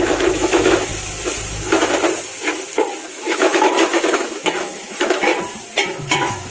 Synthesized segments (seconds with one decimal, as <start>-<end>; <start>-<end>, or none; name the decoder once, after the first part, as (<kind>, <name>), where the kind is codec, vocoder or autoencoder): 0.0-0.9 (autoencoder, DAC-VAE); 3.1-5.3; 5.9-6.5